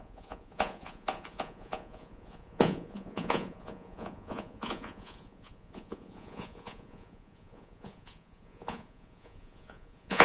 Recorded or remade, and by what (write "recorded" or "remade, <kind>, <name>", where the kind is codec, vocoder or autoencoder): remade, vocoder, Vocos